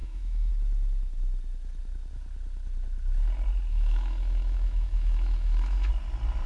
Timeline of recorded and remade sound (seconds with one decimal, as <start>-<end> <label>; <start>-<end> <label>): 0.0-0.5 remade; 0.5-3.7 recorded; 3.7-5.9 remade; 5.9-6.5 recorded